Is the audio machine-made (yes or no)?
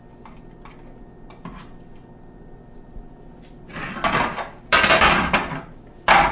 no